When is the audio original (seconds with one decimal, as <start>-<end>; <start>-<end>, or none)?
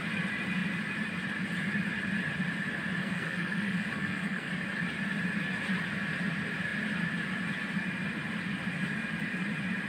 0.0-3.0; 4.5-9.9